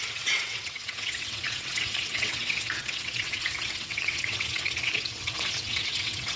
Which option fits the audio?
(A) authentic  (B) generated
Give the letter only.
B